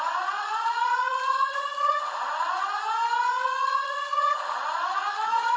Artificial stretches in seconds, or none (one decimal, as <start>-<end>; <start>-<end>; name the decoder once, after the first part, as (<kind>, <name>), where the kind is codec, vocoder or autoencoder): 0.0-2.7 (vocoder, Vocos); 3.3-5.6